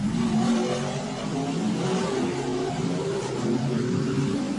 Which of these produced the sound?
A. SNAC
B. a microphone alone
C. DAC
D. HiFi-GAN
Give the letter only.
B